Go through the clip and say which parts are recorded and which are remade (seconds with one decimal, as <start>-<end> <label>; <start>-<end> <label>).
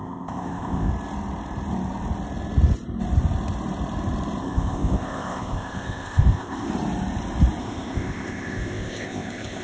0.0-0.9 remade; 0.9-4.4 recorded; 4.4-6.7 remade; 6.7-7.6 recorded; 7.6-9.6 remade